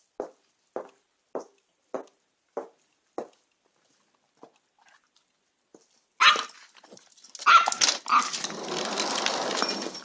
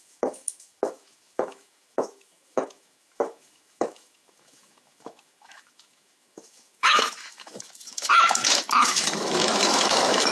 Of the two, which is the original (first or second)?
first